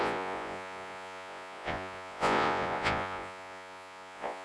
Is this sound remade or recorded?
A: remade